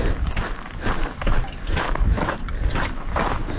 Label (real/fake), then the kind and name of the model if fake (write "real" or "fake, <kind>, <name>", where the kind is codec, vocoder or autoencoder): fake, vocoder, BigVGAN v2